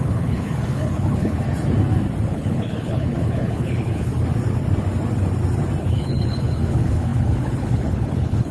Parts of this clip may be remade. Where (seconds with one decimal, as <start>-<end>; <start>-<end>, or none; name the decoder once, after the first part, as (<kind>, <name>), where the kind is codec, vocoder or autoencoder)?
0.0-1.4 (codec, HILCodec); 2.3-4.1; 5.8-8.5